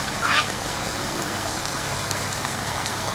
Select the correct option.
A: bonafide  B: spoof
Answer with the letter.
B